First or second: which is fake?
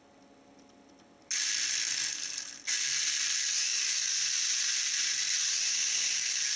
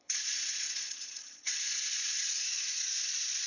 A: second